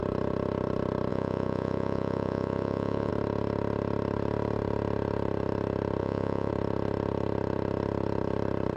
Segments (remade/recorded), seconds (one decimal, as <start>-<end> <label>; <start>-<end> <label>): 0.0-1.1 recorded; 1.1-3.1 remade; 3.1-6.0 recorded; 6.0-6.5 remade; 6.5-8.8 recorded